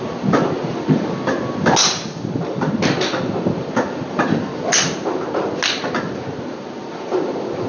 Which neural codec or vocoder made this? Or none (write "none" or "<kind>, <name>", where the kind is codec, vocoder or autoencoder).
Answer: none